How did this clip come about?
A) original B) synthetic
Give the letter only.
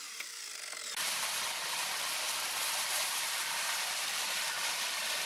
B